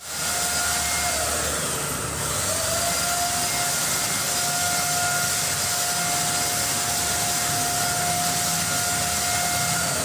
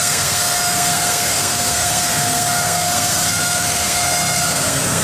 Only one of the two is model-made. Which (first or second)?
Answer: second